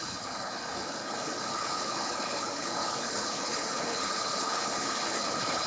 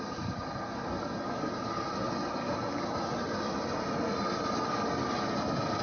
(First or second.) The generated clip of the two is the first